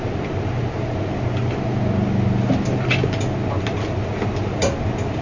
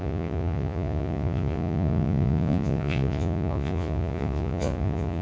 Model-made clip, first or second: second